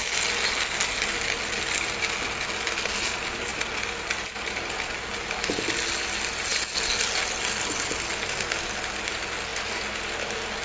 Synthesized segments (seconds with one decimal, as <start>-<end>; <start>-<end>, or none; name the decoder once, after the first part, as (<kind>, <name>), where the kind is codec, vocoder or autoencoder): none